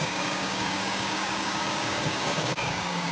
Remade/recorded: remade